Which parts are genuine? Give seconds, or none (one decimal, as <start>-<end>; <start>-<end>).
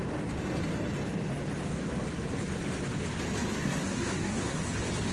0.0-3.5; 4.6-5.1